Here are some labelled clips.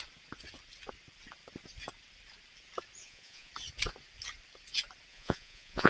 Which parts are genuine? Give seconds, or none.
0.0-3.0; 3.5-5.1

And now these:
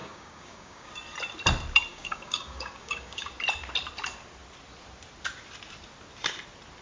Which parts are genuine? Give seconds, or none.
0.9-1.9; 3.3-6.8